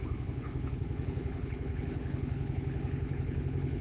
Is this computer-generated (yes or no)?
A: yes